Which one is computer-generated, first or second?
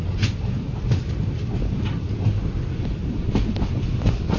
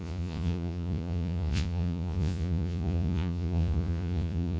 second